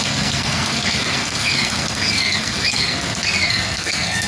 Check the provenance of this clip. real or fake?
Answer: fake